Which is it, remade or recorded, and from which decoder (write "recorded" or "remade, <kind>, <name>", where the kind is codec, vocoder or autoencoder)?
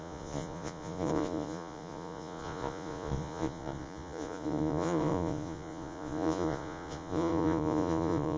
remade, vocoder, Vocos